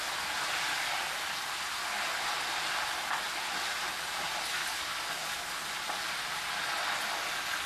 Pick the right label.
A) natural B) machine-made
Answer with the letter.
A